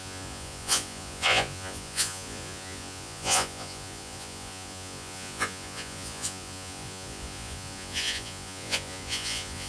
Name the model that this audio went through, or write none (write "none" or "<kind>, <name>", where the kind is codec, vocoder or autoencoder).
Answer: vocoder, Vocos